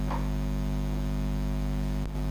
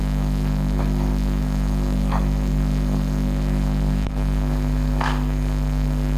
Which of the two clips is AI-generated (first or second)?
second